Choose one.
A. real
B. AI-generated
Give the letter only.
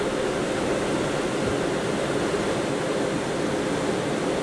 A